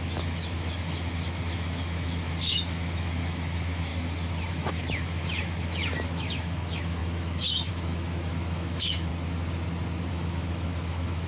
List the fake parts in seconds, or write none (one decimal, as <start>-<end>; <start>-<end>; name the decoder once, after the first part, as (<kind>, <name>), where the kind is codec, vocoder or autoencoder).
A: 0.0-3.9 (autoencoder, DAC-VAE); 4.5-9.1; 10.1-11.3